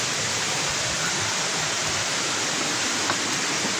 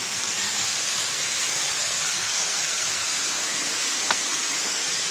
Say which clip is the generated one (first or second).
second